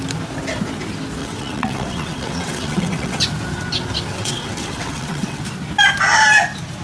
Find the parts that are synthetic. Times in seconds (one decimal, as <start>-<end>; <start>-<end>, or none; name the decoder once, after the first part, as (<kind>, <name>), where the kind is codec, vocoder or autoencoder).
1.2-3.2 (vocoder, WaveNeXt); 4.1-5.4